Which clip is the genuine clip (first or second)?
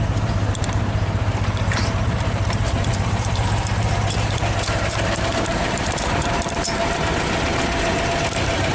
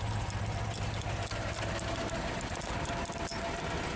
second